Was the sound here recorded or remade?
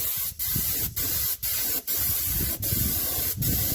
remade